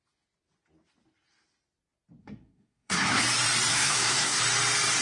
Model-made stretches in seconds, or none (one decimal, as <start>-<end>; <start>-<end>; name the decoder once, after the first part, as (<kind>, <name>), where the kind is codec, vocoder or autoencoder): 2.2-3.2 (codec, SNAC); 3.7-4.4